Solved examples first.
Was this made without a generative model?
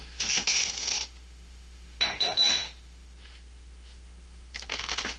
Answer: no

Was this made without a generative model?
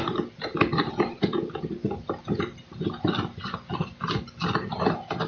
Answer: yes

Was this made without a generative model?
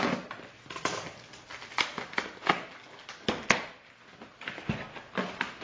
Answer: yes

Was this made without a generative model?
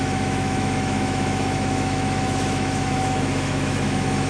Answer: no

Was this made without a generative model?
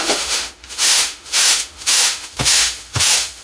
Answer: no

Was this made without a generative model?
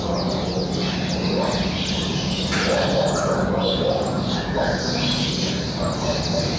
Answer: yes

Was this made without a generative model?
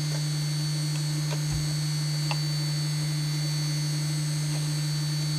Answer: yes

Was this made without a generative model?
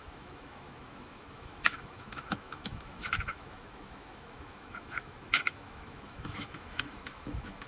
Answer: no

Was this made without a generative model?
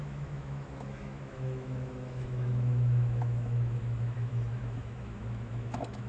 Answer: no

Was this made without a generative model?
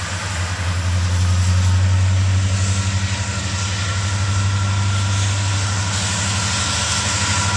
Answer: yes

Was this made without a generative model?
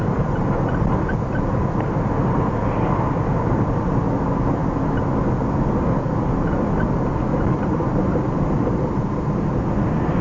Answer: yes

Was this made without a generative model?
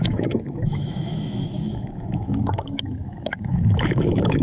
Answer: no